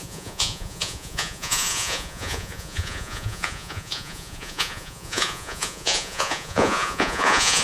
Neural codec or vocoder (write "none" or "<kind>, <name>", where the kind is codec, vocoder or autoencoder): vocoder, Vocos